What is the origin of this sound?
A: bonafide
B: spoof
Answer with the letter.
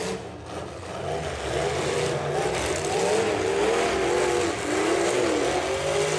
A